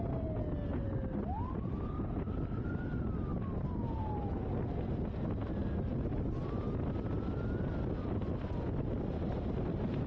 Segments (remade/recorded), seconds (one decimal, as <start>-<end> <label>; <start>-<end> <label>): 0.0-10.1 recorded